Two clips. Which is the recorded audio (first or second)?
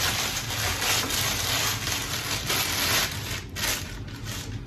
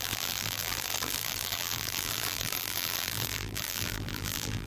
first